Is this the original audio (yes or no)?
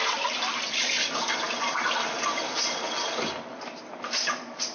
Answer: yes